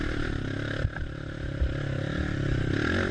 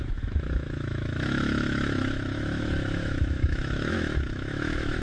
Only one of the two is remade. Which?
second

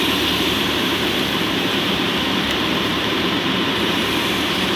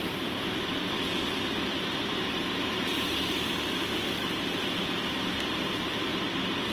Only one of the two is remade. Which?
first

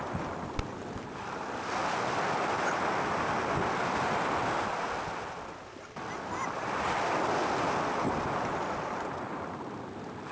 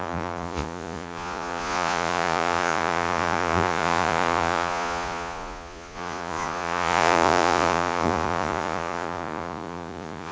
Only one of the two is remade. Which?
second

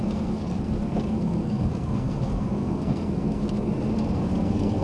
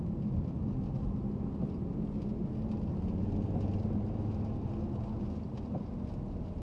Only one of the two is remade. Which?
first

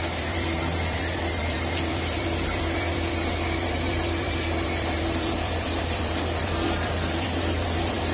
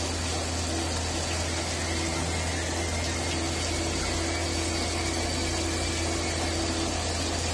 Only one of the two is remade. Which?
first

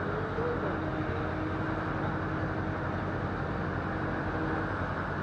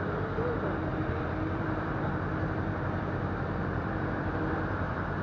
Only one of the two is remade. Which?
second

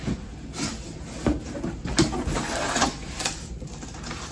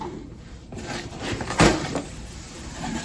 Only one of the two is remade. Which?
second